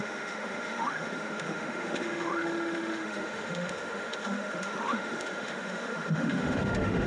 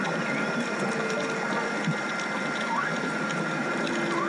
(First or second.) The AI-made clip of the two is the first